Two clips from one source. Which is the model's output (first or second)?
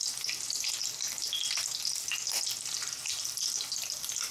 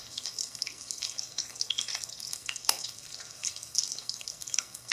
second